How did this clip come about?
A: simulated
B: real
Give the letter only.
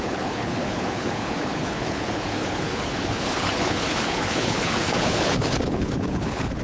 A